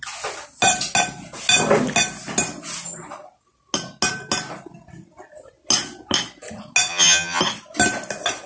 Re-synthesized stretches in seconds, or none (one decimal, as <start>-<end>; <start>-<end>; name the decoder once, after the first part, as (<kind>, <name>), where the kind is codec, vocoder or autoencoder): 6.9-7.4 (vocoder, HiFi-GAN)